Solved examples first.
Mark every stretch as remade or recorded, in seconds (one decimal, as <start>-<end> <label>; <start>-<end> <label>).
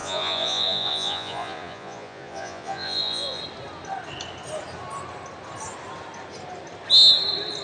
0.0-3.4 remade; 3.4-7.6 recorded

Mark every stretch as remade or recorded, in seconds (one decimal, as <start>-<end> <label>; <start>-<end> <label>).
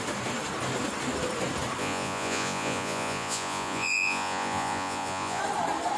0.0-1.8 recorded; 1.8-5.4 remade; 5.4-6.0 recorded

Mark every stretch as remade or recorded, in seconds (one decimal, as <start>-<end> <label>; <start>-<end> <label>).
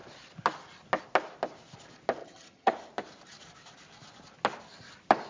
0.0-2.2 recorded; 2.2-2.7 remade; 2.7-5.3 recorded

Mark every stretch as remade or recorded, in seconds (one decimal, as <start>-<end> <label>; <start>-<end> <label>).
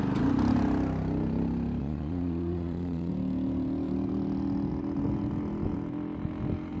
0.0-1.8 recorded; 1.8-3.1 remade; 3.1-6.8 recorded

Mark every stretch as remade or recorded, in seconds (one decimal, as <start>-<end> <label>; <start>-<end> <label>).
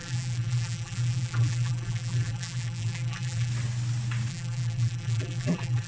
0.0-3.5 remade; 3.5-4.3 recorded; 4.3-5.9 remade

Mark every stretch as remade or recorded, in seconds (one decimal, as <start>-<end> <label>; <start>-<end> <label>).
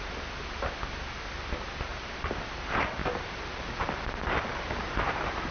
0.0-1.9 recorded; 1.9-2.4 remade; 2.4-3.0 recorded; 3.0-3.6 remade; 3.6-4.5 recorded; 4.5-5.5 remade